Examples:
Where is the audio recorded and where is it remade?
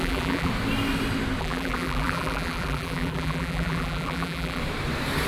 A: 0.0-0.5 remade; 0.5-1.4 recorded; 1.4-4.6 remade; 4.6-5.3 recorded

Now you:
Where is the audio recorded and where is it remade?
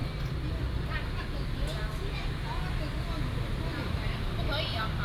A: 0.0-3.7 recorded; 3.7-5.0 remade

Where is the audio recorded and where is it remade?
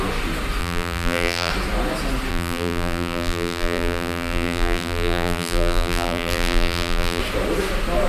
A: 0.0-0.6 recorded; 0.6-1.5 remade; 1.5-2.3 recorded; 2.3-7.2 remade; 7.2-8.1 recorded